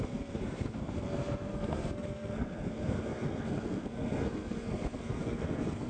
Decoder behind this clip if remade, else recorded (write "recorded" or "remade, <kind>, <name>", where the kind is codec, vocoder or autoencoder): remade, codec, SNAC